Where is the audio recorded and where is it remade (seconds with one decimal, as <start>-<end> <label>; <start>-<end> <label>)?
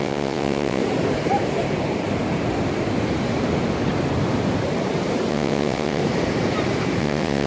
0.0-0.8 remade; 0.8-5.3 recorded; 5.3-6.0 remade; 6.0-7.0 recorded; 7.0-7.5 remade